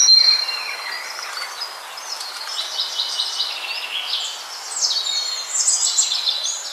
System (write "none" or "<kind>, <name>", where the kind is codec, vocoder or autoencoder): none